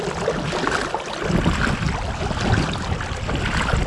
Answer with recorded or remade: recorded